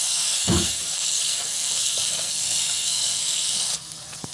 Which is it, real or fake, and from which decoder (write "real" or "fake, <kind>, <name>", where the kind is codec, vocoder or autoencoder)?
fake, codec, SNAC